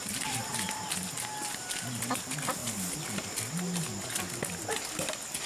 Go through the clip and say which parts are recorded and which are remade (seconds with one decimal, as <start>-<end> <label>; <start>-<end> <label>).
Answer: 0.0-5.5 recorded